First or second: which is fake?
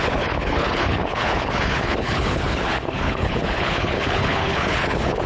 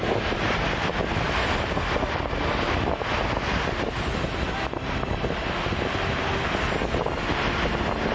first